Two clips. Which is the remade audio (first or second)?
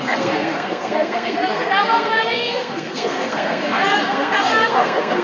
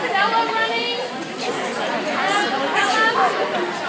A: first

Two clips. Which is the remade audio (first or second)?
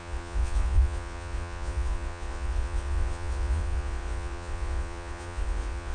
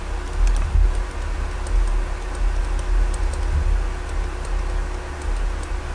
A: first